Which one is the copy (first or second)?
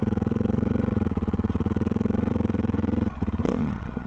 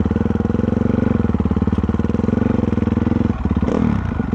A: first